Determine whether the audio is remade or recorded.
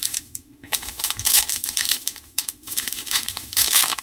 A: remade